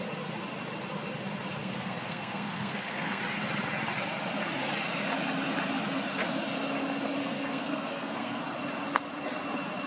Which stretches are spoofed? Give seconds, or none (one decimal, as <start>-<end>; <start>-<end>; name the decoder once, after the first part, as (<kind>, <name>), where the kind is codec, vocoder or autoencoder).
1.6-3.2 (codec, SNAC); 7.2-8.4